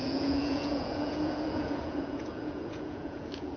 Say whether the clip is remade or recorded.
remade